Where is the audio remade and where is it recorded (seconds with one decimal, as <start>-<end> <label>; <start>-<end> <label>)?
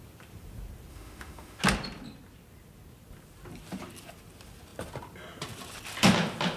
0.0-0.9 recorded; 0.9-1.6 remade; 1.6-6.6 recorded